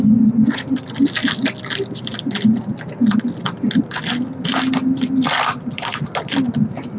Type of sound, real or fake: real